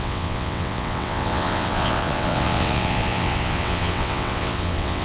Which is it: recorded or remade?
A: remade